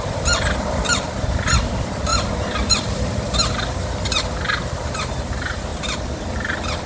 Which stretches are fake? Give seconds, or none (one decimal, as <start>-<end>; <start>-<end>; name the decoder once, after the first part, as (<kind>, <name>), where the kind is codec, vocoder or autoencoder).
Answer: 0.0-2.1 (vocoder, BigVGAN v2); 2.7-6.9